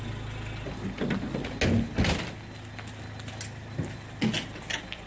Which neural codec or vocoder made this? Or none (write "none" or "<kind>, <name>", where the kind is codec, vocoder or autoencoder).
none